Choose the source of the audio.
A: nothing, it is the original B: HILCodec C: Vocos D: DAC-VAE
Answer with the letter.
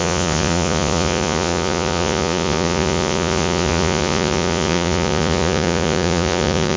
C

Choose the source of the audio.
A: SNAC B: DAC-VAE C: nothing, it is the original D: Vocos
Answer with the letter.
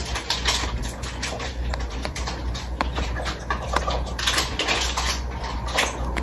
D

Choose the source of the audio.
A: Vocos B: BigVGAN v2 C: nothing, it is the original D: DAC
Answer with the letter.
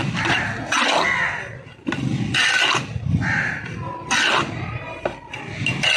C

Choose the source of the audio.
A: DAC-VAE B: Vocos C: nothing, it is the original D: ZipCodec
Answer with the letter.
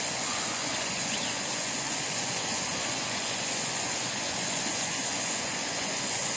B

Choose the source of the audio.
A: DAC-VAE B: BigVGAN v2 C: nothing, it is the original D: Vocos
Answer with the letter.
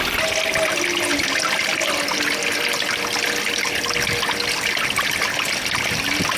C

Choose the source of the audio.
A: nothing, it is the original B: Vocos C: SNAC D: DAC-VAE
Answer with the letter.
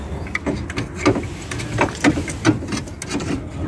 A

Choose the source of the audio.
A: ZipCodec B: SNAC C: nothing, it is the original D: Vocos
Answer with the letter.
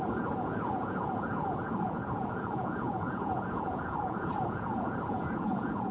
D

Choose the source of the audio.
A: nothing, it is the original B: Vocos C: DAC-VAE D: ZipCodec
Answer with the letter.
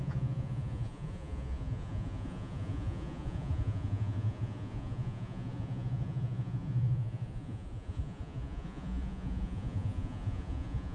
B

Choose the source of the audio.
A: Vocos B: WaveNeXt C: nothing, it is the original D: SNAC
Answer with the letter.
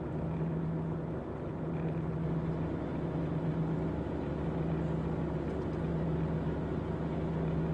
C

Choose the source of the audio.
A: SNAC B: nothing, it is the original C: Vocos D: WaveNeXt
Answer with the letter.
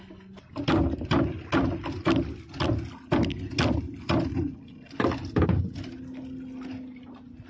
B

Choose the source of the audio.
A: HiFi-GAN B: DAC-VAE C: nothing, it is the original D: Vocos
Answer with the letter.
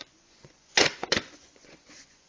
D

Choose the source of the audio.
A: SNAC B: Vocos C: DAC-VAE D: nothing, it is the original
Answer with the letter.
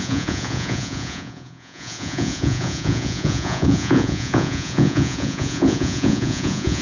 B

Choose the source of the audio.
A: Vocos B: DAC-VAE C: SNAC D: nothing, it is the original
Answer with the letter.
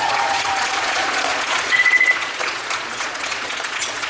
A